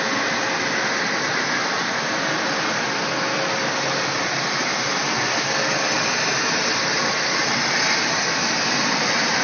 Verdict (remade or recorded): recorded